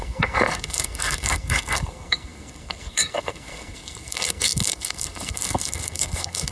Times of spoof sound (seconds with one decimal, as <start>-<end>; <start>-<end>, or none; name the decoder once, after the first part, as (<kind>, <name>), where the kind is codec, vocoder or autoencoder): 0.0-6.5 (codec, SNAC)